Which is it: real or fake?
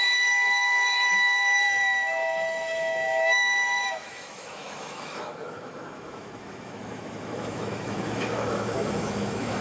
fake